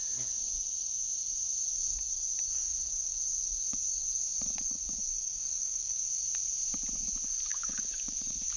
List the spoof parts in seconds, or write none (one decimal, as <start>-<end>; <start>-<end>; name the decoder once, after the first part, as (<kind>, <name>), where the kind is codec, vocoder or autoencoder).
1.6-6.0 (codec, DAC); 7.5-8.6